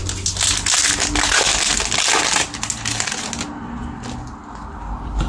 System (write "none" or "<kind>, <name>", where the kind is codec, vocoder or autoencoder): none